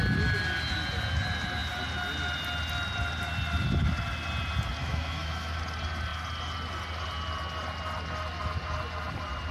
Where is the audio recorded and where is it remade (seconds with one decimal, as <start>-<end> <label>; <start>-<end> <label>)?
0.0-4.8 recorded; 4.8-5.6 remade; 5.6-9.5 recorded